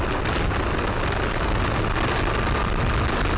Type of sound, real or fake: real